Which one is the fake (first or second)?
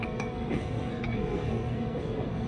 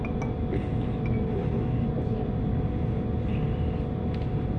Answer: first